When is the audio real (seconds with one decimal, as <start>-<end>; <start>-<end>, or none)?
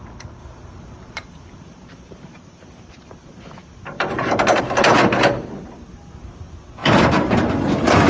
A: 0.0-0.4; 4.6-6.8; 7.4-8.1